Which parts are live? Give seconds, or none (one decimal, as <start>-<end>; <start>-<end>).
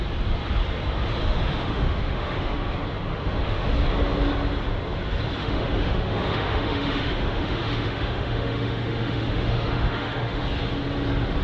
0.0-1.2; 2.7-3.1; 3.7-5.4; 10.4-11.4